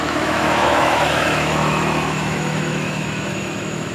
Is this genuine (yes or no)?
no